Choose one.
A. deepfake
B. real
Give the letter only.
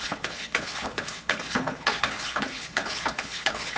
A